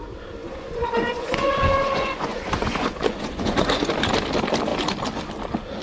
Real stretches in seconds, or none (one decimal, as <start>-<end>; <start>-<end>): 0.0-0.4; 3.9-5.8